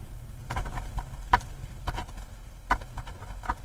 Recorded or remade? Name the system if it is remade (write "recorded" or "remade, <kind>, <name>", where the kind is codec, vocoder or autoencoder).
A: recorded